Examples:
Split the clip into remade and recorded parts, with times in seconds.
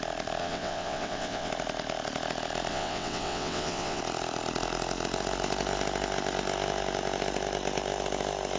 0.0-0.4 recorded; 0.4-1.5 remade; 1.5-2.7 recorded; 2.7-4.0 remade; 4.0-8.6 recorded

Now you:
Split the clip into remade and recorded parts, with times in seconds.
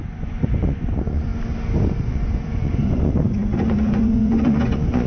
0.0-1.3 remade; 1.3-2.1 recorded; 2.1-5.1 remade